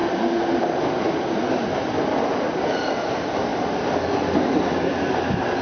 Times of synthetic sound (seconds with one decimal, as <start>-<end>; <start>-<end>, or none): none

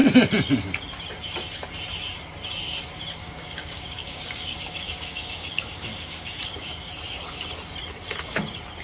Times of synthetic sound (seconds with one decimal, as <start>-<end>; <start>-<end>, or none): 3.2-6.9